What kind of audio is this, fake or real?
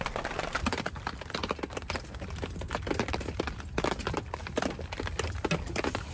real